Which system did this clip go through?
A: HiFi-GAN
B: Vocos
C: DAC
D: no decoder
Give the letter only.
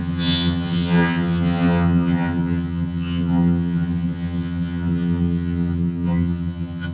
A